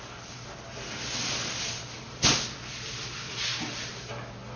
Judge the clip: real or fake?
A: real